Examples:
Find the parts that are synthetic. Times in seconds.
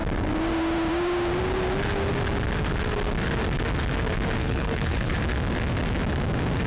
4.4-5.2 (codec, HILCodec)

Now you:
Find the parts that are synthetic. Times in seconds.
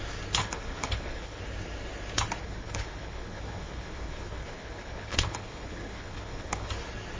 0.4-1.4 (codec, HILCodec); 2.4-6.7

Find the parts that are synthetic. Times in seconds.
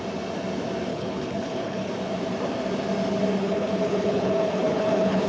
0.9-1.9 (codec, HILCodec); 3.4-5.3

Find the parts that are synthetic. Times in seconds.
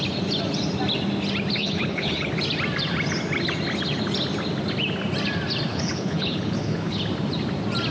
1.6-2.3 (codec, HILCodec); 5.7-7.0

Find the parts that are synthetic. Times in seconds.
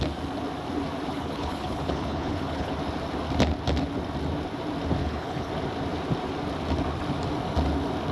1.1-2.7 (codec, HILCodec); 5.0-5.5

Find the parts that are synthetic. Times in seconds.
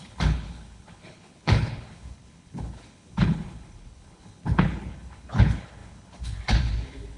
0.0-7.2 (codec, HILCodec)